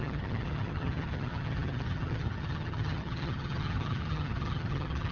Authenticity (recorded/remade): remade